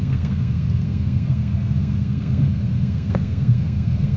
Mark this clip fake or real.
fake